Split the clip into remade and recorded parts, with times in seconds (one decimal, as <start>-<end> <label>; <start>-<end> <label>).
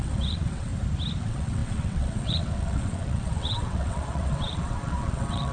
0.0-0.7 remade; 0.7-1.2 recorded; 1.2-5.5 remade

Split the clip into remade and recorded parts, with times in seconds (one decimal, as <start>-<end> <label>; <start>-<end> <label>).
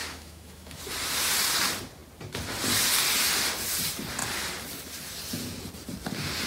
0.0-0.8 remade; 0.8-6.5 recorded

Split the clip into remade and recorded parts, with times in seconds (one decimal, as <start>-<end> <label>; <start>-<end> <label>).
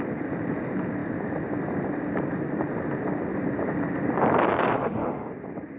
0.0-4.7 recorded; 4.7-5.3 remade; 5.3-5.8 recorded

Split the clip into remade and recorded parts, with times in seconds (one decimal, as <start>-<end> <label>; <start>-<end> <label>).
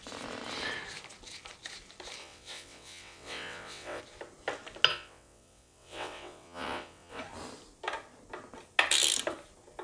0.0-2.2 recorded; 2.2-4.0 remade; 4.0-4.9 recorded; 4.9-7.2 remade; 7.2-9.8 recorded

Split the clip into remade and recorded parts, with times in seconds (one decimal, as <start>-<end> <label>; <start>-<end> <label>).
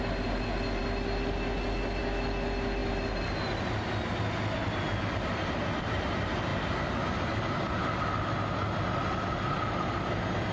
0.0-10.5 recorded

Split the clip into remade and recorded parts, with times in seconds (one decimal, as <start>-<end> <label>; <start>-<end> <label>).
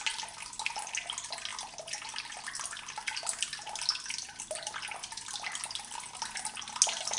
0.0-7.2 recorded